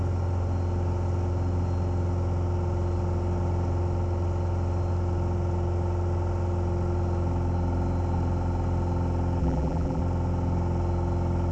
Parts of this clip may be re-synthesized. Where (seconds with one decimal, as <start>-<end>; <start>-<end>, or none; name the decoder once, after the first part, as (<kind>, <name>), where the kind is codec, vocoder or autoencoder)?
9.4-10.0 (vocoder, BigVGAN v2)